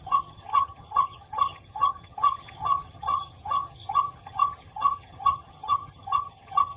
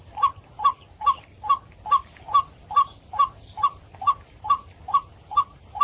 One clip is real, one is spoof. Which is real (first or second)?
second